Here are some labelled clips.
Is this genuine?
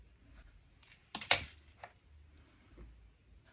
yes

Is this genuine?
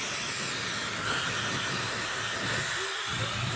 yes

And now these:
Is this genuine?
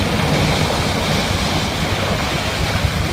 yes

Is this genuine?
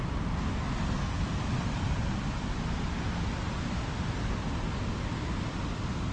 yes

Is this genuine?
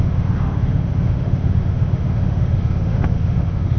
no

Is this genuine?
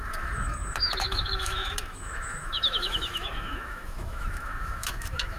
no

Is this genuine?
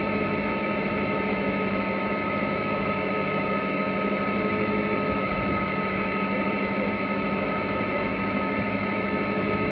no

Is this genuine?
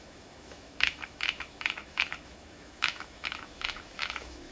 no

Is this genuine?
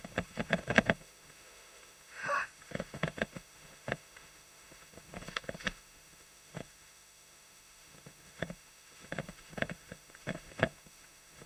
no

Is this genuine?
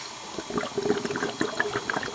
yes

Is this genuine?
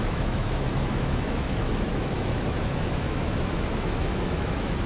no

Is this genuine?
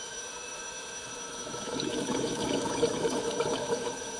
no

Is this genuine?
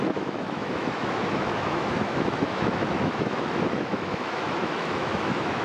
no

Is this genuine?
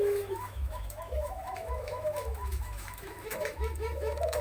no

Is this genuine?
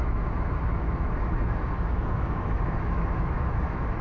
no